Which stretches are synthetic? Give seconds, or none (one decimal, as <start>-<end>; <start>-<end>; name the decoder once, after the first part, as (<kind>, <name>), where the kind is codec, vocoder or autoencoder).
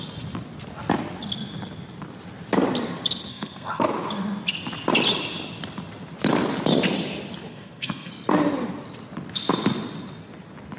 3.3-3.9 (codec, SNAC); 7.5-8.1